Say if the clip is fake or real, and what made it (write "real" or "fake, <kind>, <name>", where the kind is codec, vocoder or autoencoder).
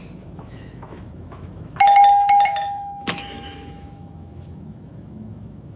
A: fake, autoencoder, DAC-VAE